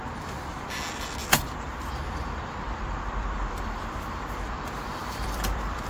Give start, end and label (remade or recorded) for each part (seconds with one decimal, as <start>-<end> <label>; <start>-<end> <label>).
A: 0.0-1.2 recorded; 1.2-4.6 remade; 4.6-5.0 recorded; 5.0-5.9 remade